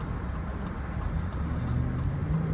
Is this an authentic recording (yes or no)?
yes